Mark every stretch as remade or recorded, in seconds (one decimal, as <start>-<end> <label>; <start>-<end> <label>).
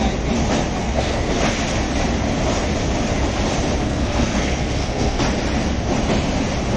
0.0-0.8 recorded; 0.8-1.4 remade; 1.4-3.8 recorded; 3.8-5.2 remade; 5.2-6.8 recorded